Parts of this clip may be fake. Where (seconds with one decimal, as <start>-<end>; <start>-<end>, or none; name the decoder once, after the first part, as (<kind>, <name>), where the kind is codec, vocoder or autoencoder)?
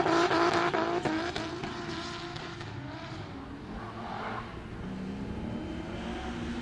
none